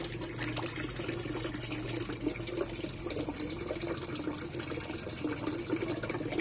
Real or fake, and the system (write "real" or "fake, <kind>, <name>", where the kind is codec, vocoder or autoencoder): real